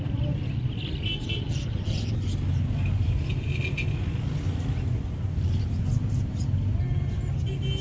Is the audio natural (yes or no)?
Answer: yes